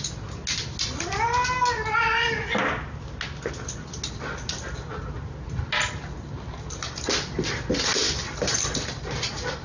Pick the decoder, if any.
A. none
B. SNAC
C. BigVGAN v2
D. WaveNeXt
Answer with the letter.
A